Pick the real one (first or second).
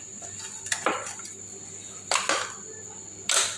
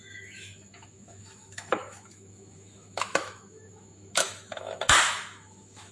first